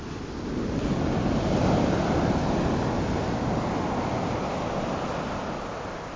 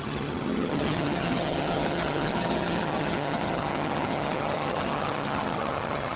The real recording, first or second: first